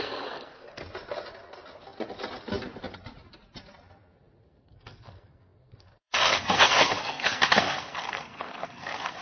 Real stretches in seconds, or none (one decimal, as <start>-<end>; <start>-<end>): 0.8-4.4